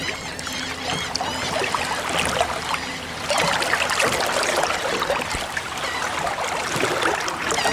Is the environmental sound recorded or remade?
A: recorded